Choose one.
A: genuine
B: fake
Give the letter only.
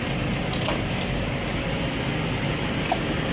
A